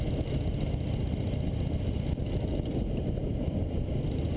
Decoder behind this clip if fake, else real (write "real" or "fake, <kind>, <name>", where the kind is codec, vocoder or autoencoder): real